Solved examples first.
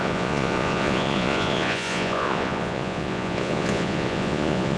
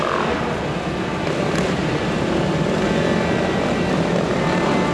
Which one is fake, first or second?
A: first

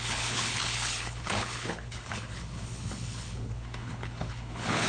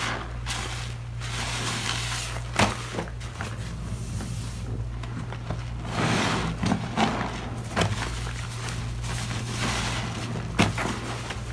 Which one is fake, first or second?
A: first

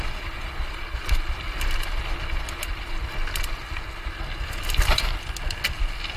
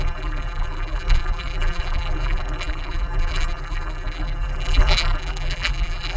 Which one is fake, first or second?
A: second